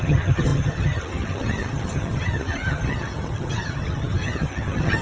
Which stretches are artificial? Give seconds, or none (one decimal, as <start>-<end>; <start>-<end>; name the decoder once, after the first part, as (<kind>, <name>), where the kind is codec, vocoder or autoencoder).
0.0-5.0 (vocoder, HiFi-GAN)